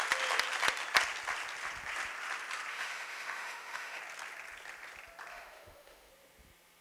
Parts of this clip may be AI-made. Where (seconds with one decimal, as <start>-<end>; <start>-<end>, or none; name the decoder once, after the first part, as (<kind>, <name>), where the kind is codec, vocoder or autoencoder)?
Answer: 2.7-4.0 (autoencoder, DAC-VAE); 5.3-6.1